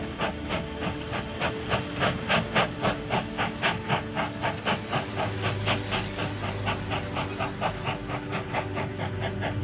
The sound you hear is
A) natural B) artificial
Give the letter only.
A